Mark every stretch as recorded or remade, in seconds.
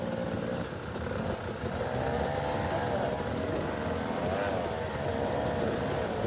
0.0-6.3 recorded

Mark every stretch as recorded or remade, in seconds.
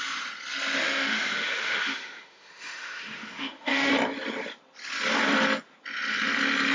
0.0-0.8 recorded; 0.8-3.9 remade; 3.9-6.7 recorded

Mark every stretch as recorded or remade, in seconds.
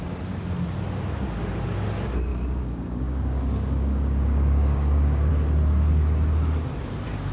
0.0-2.3 recorded; 2.3-5.3 remade; 5.3-7.3 recorded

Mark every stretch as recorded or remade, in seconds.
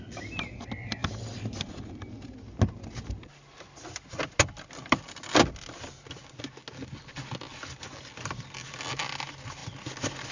0.0-10.3 recorded